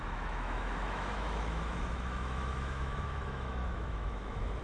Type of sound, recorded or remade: remade